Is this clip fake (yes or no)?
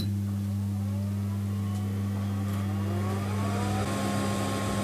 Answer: no